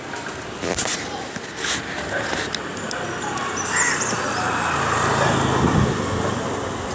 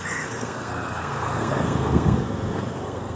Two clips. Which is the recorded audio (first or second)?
first